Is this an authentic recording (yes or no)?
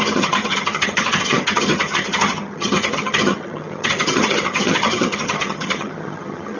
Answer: no